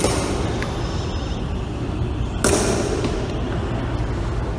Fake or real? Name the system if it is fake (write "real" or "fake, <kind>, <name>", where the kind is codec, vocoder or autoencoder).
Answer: real